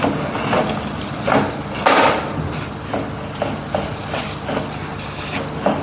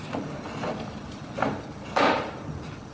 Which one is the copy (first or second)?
second